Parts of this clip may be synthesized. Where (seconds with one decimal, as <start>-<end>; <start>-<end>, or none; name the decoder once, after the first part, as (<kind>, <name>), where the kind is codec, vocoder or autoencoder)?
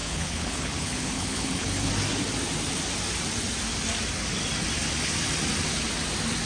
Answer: 0.0-1.9 (codec, HILCodec)